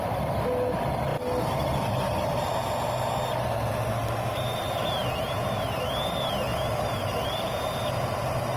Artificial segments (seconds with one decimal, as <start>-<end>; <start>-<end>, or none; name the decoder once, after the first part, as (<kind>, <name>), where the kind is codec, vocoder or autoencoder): 4.5-5.4 (vocoder, BigVGAN v2); 6.5-8.6